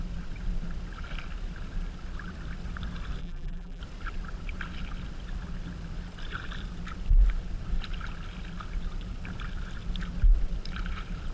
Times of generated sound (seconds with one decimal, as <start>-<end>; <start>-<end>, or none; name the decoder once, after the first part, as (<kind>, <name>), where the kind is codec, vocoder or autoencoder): 3.2-3.8 (vocoder, BigVGAN v2)

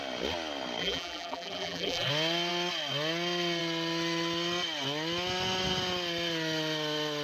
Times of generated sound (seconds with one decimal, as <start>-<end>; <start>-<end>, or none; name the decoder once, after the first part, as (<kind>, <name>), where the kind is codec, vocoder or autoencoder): 0.8-2.1 (vocoder, BigVGAN v2)